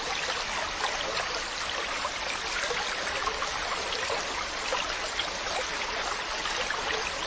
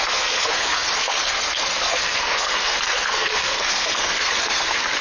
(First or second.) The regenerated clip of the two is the second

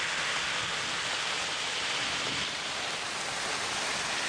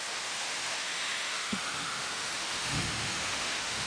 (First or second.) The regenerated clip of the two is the second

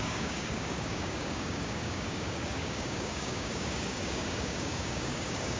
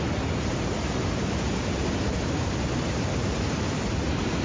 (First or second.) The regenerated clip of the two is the first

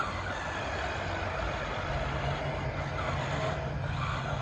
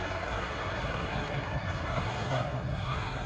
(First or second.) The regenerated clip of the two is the second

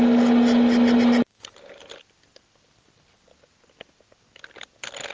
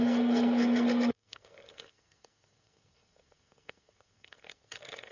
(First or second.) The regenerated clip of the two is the second